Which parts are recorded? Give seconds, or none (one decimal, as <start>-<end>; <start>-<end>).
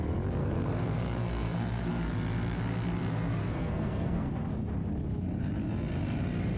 0.0-0.4; 1.9-3.4; 4.3-6.6